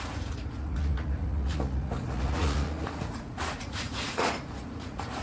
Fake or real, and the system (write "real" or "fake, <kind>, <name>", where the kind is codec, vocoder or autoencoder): fake, vocoder, Vocos